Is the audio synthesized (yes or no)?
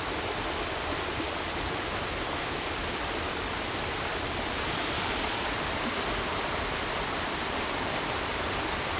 yes